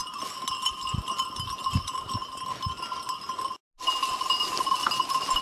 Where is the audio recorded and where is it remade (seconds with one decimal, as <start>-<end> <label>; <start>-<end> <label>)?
0.0-1.6 recorded; 1.6-2.2 remade; 2.2-3.9 recorded; 3.9-5.4 remade